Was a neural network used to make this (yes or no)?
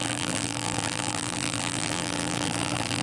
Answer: yes